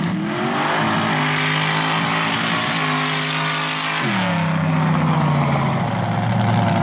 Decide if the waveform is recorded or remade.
recorded